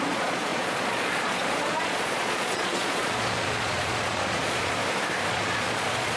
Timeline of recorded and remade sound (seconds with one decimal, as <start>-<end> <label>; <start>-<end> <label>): 0.0-4.8 remade; 4.8-5.3 recorded; 5.3-6.2 remade